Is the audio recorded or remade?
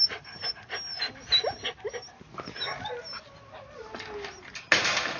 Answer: recorded